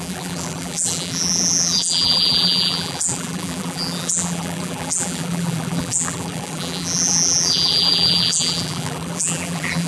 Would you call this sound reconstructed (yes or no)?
yes